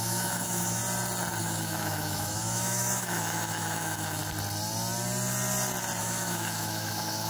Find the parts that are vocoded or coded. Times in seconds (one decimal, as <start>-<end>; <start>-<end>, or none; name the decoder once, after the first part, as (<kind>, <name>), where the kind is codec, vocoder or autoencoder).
0.0-0.8 (autoencoder, DAC-VAE); 1.4-4.2; 6.0-7.3